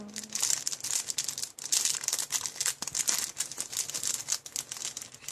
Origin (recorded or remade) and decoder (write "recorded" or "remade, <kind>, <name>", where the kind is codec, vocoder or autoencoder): recorded